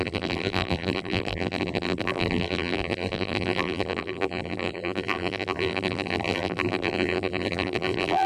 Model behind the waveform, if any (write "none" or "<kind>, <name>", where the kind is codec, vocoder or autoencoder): vocoder, BigVGAN v2